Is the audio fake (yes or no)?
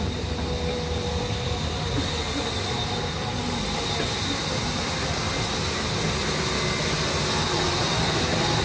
no